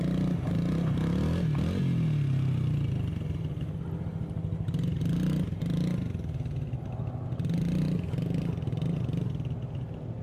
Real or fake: real